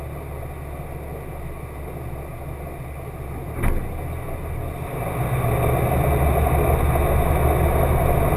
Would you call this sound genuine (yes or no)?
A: yes